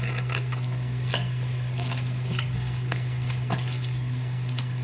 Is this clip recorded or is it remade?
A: remade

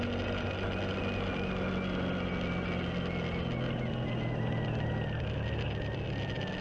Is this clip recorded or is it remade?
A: recorded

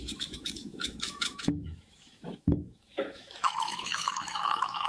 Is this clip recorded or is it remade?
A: remade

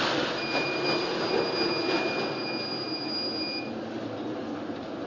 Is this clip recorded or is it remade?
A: recorded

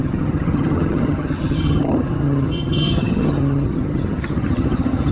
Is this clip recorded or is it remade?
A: remade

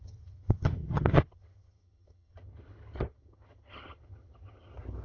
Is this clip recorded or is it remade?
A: remade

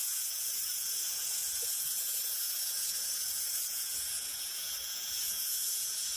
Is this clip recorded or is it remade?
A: remade